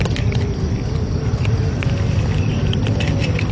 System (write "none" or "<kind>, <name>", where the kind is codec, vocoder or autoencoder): none